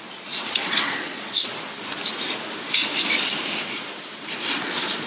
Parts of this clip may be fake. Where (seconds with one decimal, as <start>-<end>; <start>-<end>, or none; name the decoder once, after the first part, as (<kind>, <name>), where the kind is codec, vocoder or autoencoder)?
0.0-1.5 (vocoder, Vocos); 4.6-5.1